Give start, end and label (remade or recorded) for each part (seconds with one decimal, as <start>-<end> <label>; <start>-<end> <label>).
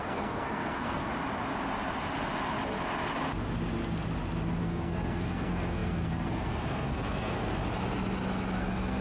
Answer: 0.0-1.1 remade; 1.1-4.6 recorded; 4.6-7.6 remade; 7.6-8.6 recorded; 8.6-9.0 remade